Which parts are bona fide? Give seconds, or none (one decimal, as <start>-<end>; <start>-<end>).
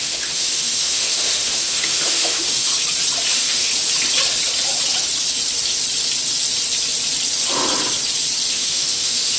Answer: 2.7-3.3; 3.7-8.5